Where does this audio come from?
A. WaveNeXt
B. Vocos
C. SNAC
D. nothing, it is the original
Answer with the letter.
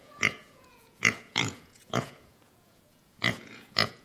B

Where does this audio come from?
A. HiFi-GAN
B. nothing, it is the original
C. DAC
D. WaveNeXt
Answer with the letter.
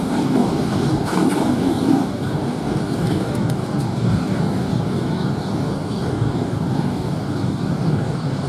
C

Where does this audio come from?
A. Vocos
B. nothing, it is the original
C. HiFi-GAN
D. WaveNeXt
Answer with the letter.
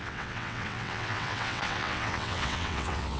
D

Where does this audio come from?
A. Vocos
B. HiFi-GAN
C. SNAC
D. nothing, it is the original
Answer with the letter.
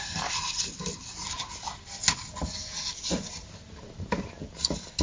D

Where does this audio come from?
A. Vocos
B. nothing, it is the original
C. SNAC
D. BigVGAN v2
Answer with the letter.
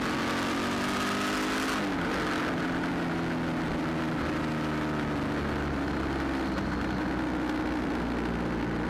B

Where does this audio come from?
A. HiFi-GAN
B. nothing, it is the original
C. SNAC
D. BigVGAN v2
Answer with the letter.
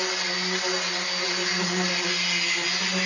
B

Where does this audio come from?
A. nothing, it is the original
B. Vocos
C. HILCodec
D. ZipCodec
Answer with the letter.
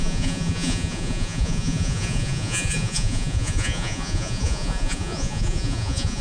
B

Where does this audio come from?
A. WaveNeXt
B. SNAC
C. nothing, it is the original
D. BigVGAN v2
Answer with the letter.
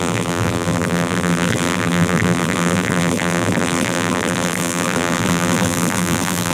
D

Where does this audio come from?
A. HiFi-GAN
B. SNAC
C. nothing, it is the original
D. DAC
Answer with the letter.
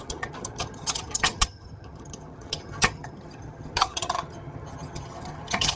A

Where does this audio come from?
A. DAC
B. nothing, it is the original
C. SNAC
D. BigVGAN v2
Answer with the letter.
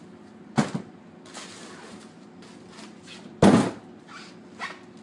B